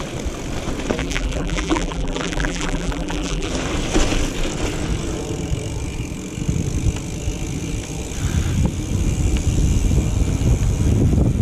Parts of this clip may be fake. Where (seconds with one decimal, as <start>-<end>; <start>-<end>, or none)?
1.0-3.5